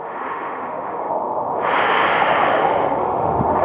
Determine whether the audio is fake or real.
fake